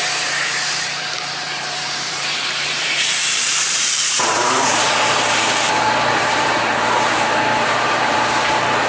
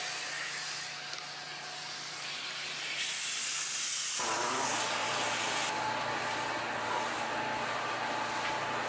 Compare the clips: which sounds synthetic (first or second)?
first